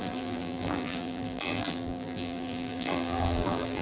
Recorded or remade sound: remade